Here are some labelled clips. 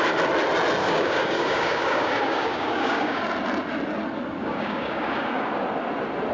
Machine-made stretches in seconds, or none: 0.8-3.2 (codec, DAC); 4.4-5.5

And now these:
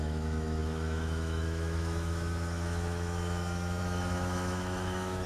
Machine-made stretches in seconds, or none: 0.0-5.3 (autoencoder, DAC-VAE)

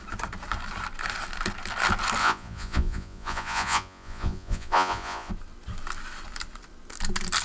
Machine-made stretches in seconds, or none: 2.2-5.3 (vocoder, Vocos)